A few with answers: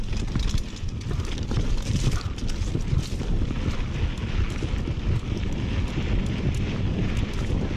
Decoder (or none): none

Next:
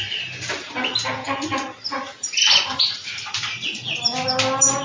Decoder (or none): none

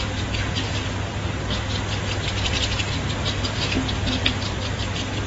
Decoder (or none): vocoder, BigVGAN v2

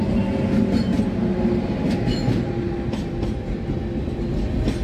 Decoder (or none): none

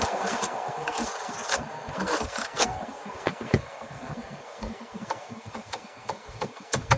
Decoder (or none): codec, SNAC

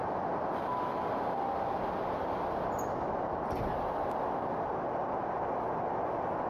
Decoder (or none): none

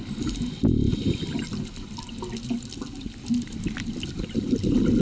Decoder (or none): none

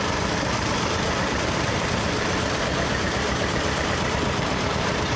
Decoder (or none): vocoder, BigVGAN v2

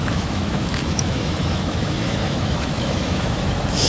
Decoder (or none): autoencoder, DAC-VAE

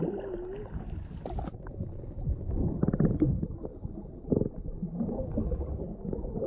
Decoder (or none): none